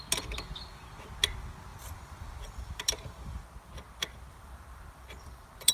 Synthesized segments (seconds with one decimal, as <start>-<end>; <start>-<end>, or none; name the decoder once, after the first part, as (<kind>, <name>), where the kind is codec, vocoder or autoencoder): 1.7-3.4 (vocoder, BigVGAN v2); 4.3-5.7